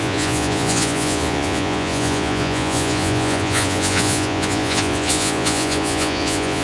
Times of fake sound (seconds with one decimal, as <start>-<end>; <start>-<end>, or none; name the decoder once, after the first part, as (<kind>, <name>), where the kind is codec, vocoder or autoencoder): 0.0-6.6 (vocoder, Vocos)